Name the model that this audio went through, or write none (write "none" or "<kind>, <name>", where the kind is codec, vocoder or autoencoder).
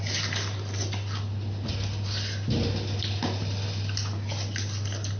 none